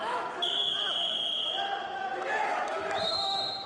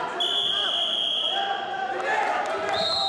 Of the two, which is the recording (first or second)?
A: second